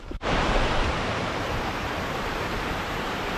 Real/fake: fake